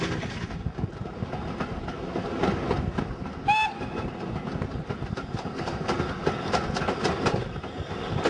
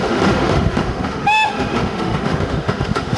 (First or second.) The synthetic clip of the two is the second